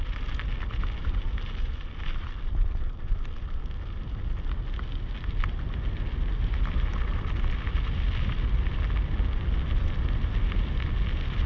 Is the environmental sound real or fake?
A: real